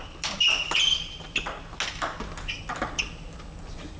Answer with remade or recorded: recorded